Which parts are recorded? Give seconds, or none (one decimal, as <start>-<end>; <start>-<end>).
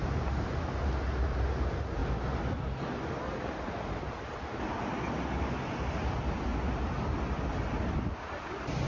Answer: 0.7-8.9